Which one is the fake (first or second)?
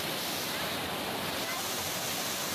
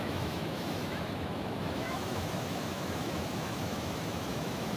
second